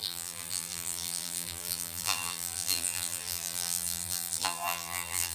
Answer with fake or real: fake